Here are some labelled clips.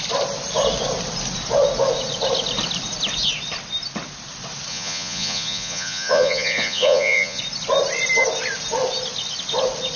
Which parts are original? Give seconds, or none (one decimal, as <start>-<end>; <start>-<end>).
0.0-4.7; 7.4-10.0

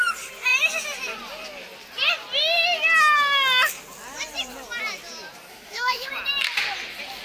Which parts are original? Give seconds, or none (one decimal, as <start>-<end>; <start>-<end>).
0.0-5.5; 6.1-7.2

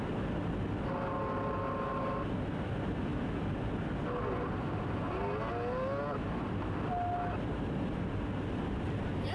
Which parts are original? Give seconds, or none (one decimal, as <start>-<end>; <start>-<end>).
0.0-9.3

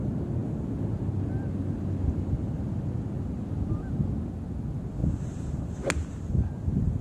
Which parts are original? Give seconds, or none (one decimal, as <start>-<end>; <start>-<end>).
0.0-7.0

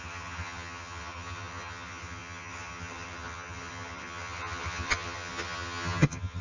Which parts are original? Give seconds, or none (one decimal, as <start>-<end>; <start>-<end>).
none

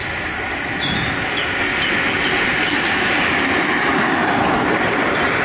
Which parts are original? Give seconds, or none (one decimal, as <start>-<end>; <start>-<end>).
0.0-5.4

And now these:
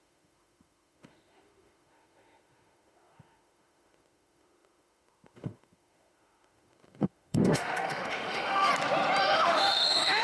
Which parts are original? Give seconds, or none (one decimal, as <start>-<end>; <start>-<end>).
8.7-9.2